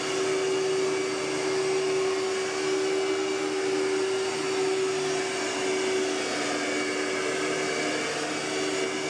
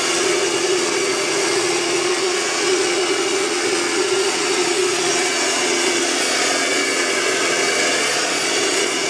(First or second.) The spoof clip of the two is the second